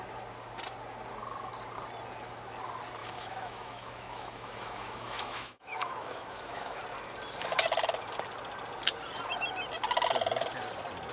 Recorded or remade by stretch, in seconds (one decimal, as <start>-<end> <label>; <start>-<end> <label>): 0.0-3.0 recorded; 3.0-6.8 remade; 6.8-11.1 recorded